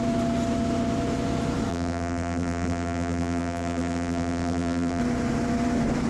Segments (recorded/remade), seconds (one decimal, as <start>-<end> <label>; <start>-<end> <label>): 0.0-1.7 recorded; 1.7-5.0 remade; 5.0-6.1 recorded